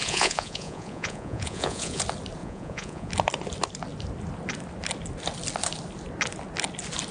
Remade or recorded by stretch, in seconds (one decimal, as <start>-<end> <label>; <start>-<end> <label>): 0.0-2.0 remade; 2.0-2.4 recorded; 2.4-3.1 remade; 3.1-7.1 recorded